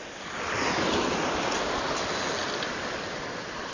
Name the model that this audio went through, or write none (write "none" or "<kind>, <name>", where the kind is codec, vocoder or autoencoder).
none